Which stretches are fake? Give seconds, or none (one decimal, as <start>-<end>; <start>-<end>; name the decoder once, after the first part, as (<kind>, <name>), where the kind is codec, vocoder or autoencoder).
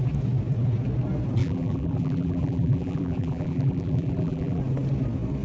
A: 1.4-4.6 (vocoder, BigVGAN v2)